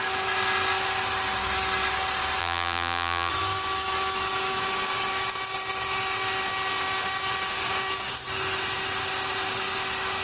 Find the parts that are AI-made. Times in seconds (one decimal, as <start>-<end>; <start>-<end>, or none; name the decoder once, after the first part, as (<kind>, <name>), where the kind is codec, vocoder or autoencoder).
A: 2.4-3.3 (vocoder, BigVGAN v2)